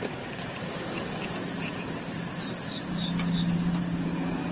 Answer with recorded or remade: remade